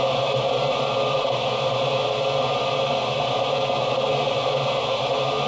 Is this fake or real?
real